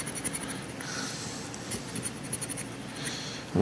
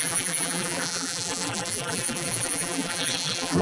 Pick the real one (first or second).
first